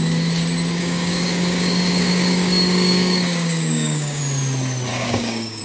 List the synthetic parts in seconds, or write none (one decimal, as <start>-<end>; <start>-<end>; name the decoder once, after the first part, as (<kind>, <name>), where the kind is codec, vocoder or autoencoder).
0.8-4.2 (codec, DAC); 4.9-5.6